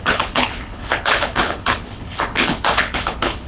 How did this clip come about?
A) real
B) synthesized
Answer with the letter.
B